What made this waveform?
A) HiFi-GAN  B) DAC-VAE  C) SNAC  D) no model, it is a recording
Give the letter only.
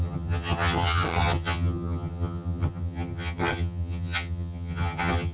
A